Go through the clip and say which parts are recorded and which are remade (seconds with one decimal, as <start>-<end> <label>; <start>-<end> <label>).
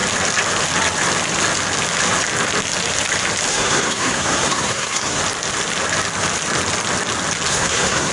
0.0-3.5 recorded; 3.5-5.2 remade; 5.2-7.5 recorded; 7.5-8.1 remade